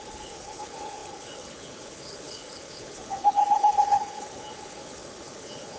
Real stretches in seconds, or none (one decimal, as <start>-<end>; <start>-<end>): none